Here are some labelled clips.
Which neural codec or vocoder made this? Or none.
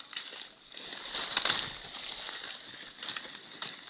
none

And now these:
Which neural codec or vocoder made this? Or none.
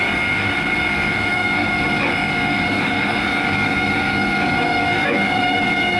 codec, DAC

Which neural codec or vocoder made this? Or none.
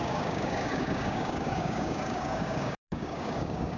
codec, DAC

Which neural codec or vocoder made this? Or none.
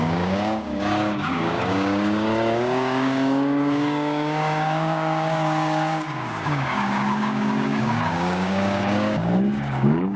codec, DAC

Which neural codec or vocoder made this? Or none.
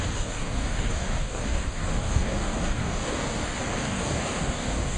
codec, DAC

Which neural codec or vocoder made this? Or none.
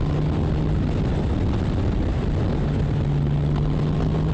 none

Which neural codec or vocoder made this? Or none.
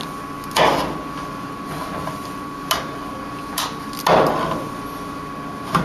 none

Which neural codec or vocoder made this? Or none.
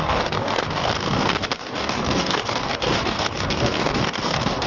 codec, DAC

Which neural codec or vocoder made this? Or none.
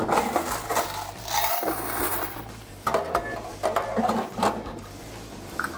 none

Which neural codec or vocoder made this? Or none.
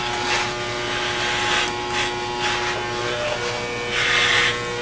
none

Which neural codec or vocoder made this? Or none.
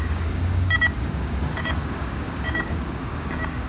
codec, DAC